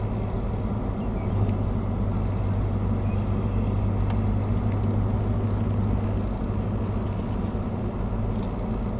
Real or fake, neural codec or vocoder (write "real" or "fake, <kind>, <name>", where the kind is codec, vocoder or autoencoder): real